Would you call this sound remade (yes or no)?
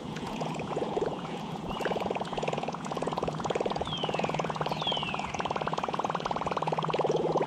yes